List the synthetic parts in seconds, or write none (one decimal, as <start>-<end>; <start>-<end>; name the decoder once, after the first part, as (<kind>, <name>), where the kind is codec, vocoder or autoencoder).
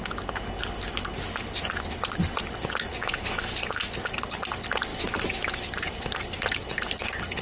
2.9-3.9 (autoencoder, DAC-VAE); 4.9-5.6